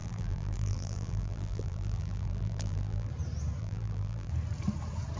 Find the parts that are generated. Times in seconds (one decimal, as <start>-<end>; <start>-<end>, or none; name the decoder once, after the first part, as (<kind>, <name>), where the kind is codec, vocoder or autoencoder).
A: 0.0-3.1 (vocoder, BigVGAN v2); 3.6-4.3